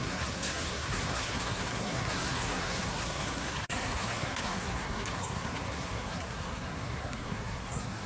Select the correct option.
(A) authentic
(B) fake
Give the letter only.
B